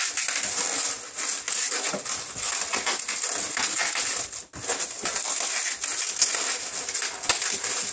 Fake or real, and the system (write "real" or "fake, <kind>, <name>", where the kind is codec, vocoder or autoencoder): real